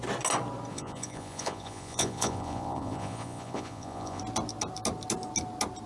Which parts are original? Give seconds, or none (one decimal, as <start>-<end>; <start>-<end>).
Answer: 0.0-0.7; 4.2-5.9